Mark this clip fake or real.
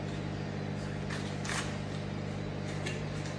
real